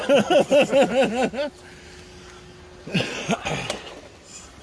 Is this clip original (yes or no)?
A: yes